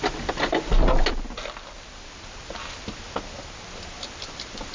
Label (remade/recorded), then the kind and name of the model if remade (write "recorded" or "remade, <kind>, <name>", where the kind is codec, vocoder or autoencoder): recorded